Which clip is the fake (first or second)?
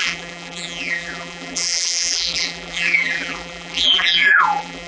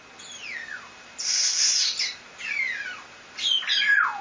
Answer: first